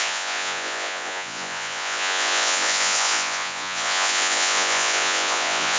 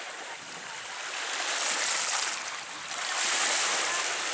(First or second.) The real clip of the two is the second